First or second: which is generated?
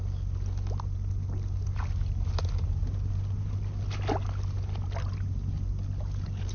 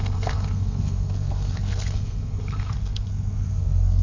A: second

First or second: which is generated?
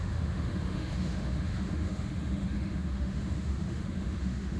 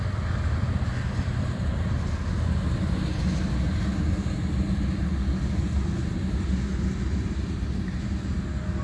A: first